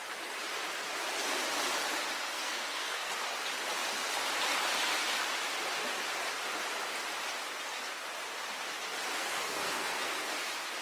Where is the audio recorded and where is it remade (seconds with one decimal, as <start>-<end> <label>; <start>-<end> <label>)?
0.0-2.3 recorded; 2.3-3.1 remade; 3.1-9.1 recorded; 9.1-10.3 remade; 10.3-10.8 recorded